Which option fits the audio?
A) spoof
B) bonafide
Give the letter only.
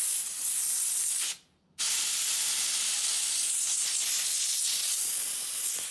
B